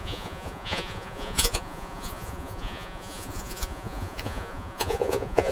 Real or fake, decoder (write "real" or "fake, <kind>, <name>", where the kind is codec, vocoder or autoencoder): fake, vocoder, Vocos